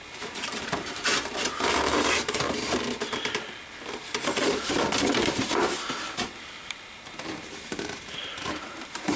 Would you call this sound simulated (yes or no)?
yes